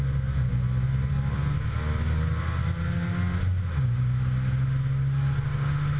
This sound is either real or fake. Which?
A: real